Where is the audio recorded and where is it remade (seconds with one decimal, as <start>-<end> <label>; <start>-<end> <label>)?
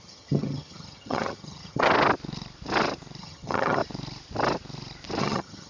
0.0-1.9 remade; 1.9-3.2 recorded; 3.2-3.8 remade; 3.8-5.2 recorded; 5.2-5.7 remade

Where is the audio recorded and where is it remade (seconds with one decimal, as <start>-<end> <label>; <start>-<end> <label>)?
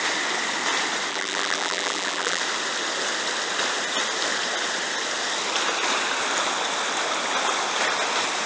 0.0-1.1 recorded; 1.1-2.4 remade; 2.4-8.5 recorded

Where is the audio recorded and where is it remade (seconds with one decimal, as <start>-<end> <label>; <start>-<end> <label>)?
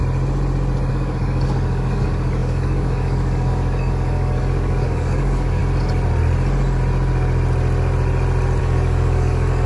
0.0-0.9 recorded; 0.9-5.6 remade; 5.6-8.6 recorded; 8.6-9.7 remade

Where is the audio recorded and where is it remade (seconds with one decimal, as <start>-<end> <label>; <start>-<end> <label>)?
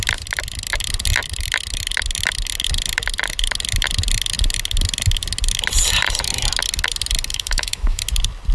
0.0-7.3 recorded; 7.3-8.0 remade; 8.0-8.5 recorded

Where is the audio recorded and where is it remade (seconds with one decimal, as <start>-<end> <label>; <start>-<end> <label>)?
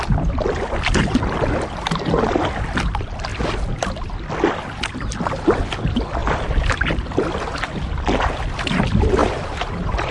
0.0-9.2 recorded; 9.2-10.1 remade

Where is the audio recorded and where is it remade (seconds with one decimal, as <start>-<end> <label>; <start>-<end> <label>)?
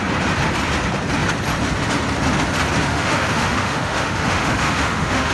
0.0-2.9 recorded; 2.9-5.3 remade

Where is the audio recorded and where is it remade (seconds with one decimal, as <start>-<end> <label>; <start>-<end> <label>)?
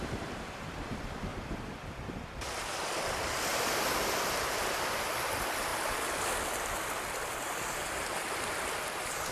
0.0-1.3 remade; 1.3-2.4 recorded; 2.4-5.7 remade; 5.7-6.9 recorded; 6.9-9.3 remade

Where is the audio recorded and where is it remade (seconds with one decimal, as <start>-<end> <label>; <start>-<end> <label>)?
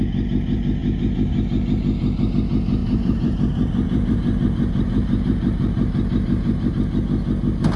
0.0-2.8 recorded; 2.8-6.7 remade; 6.7-7.8 recorded